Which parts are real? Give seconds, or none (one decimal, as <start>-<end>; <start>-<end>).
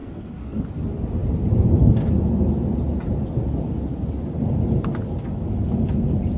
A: 0.6-6.4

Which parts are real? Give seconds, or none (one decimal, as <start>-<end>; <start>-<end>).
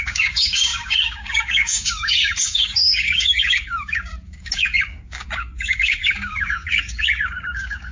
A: none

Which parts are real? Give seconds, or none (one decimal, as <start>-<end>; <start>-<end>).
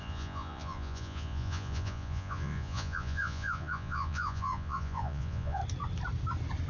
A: 5.6-6.7